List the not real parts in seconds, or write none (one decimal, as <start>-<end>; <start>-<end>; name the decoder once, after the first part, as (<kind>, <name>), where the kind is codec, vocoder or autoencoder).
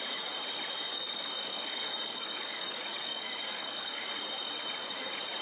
0.9-4.1 (codec, DAC)